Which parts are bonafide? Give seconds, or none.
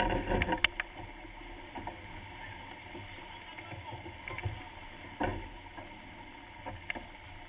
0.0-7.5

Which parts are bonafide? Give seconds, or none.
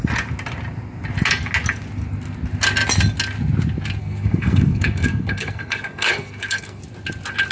0.0-4.0; 6.8-7.5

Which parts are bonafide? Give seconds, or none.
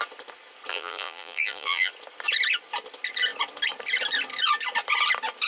0.0-0.7; 1.9-5.5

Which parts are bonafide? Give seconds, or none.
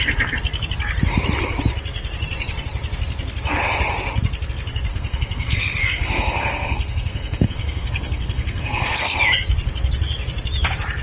0.0-4.9; 9.2-11.0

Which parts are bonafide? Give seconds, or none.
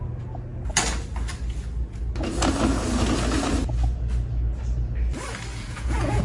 0.0-5.5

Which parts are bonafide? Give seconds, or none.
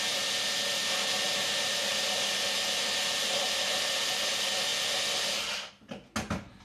0.0-6.6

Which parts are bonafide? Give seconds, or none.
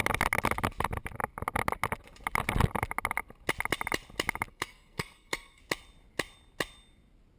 0.0-4.5; 5.6-7.4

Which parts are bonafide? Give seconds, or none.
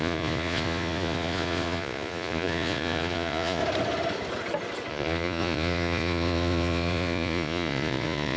3.6-4.9